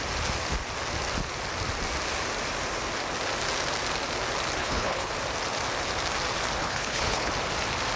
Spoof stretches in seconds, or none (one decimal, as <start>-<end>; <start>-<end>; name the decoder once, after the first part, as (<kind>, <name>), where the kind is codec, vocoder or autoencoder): 4.6-5.1 (codec, HILCodec); 6.6-7.3